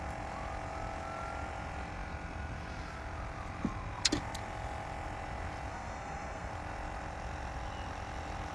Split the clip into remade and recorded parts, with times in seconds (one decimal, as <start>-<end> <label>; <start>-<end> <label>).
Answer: 0.0-5.7 recorded; 5.7-6.5 remade; 6.5-8.5 recorded